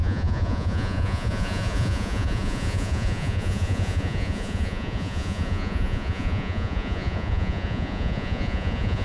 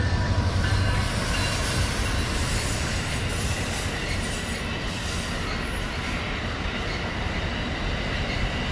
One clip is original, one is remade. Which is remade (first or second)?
first